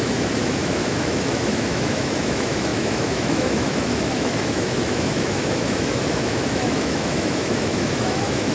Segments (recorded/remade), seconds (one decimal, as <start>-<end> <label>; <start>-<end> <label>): 0.0-8.5 remade